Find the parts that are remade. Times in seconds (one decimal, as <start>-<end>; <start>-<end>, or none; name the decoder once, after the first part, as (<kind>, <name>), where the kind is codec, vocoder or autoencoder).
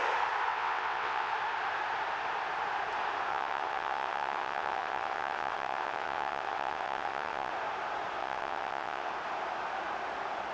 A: 0.5-1.3 (vocoder, WaveNeXt); 3.3-7.5; 8.2-9.1